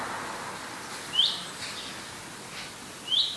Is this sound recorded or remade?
recorded